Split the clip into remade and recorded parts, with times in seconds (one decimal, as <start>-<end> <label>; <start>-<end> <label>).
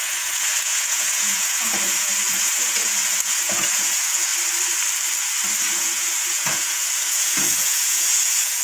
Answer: 0.0-4.3 remade; 4.3-5.6 recorded; 5.6-8.6 remade